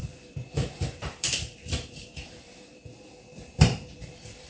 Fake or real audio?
fake